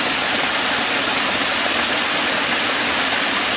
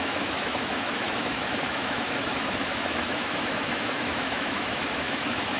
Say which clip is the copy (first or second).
second